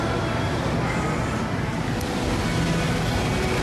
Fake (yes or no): no